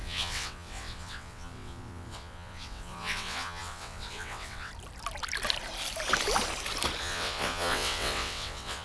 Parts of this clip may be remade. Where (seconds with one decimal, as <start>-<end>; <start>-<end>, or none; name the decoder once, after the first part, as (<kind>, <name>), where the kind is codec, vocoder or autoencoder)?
0.0-4.7 (vocoder, WaveNeXt); 7.0-8.8